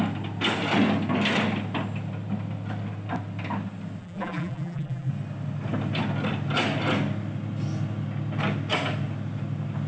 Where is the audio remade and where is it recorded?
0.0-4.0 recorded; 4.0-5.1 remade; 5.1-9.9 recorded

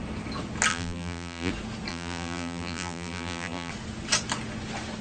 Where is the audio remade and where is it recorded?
0.0-0.7 recorded; 0.7-1.5 remade; 1.5-1.9 recorded; 1.9-3.7 remade; 3.7-5.0 recorded

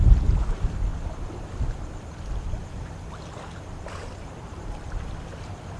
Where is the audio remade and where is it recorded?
0.0-5.8 recorded

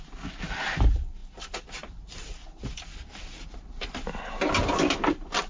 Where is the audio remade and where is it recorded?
0.0-1.2 recorded; 1.2-4.4 remade; 4.4-5.5 recorded

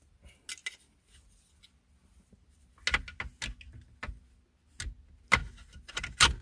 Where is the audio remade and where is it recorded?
0.0-6.4 recorded

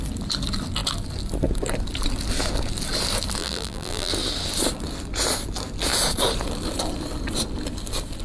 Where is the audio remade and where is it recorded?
0.0-3.4 recorded; 3.4-4.1 remade; 4.1-8.2 recorded